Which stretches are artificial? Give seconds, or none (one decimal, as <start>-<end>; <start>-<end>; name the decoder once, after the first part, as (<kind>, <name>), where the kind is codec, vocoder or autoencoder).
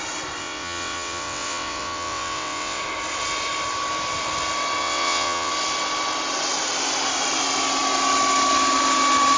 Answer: 0.4-2.8 (vocoder, WaveNeXt); 4.8-5.5